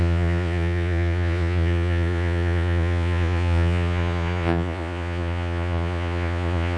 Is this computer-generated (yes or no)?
yes